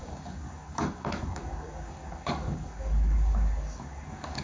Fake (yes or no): yes